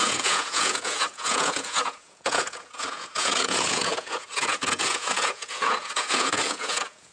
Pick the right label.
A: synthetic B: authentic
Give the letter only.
A